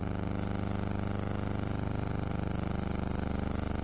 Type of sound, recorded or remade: recorded